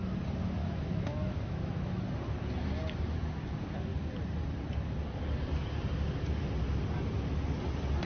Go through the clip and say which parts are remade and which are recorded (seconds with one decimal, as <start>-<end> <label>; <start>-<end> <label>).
0.0-0.6 recorded; 0.6-2.0 remade; 2.0-8.0 recorded